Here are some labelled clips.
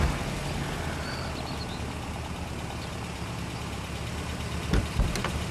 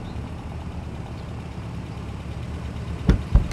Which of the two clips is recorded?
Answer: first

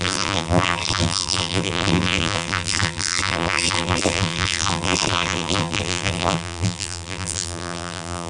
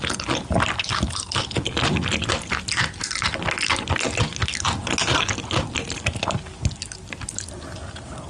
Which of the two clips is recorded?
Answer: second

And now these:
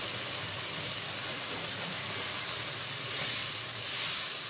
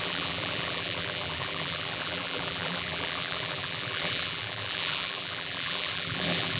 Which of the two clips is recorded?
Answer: first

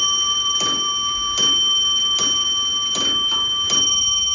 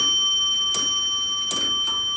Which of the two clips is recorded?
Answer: second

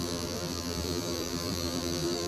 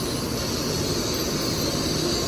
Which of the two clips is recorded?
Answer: second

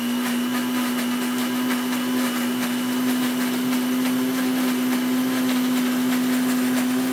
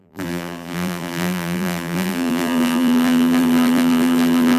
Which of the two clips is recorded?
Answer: first